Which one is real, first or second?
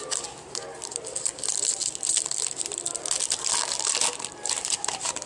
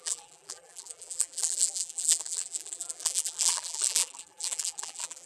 first